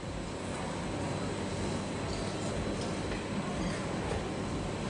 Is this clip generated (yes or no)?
no